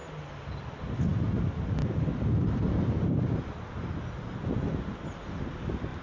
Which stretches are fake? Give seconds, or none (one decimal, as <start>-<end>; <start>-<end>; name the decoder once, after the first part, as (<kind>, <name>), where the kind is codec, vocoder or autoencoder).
none